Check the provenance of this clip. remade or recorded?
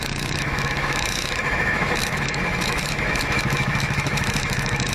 remade